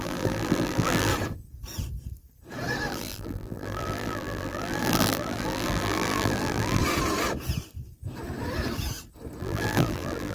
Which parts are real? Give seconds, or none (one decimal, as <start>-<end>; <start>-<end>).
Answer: 1.1-2.9; 6.8-9.4